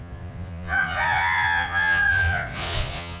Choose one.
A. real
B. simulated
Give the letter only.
B